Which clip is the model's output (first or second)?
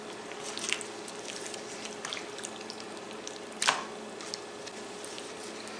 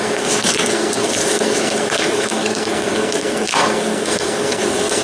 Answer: second